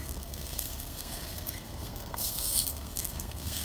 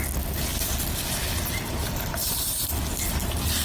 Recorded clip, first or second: second